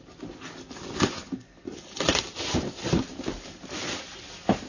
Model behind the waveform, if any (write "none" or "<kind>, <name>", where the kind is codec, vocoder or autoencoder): none